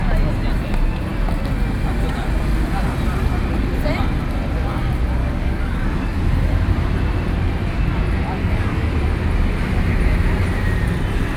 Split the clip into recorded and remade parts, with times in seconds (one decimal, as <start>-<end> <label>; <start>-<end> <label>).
0.0-5.2 recorded; 5.2-6.3 remade; 6.3-8.4 recorded; 8.4-8.9 remade; 8.9-11.4 recorded